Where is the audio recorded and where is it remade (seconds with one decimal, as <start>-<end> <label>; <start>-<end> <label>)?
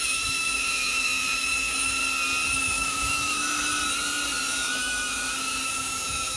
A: 0.0-2.0 remade; 2.0-2.6 recorded; 2.6-3.8 remade; 3.8-4.5 recorded; 4.5-6.4 remade